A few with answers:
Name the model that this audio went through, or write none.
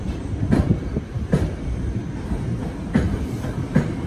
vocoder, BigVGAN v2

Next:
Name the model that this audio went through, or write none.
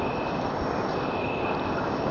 none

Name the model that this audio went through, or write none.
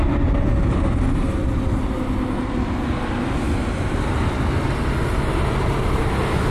none